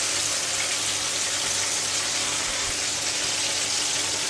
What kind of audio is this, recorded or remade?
recorded